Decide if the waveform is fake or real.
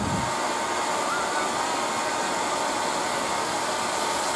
real